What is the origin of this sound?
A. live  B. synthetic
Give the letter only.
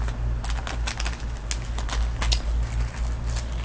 A